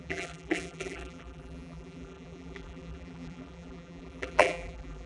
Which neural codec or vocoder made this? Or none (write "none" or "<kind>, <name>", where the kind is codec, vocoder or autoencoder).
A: vocoder, BigVGAN v2